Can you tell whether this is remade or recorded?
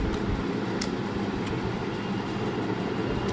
recorded